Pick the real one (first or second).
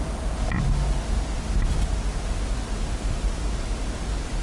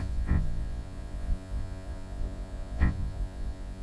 first